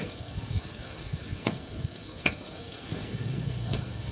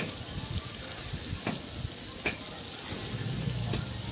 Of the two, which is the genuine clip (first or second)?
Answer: second